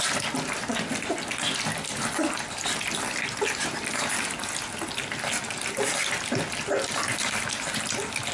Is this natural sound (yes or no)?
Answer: yes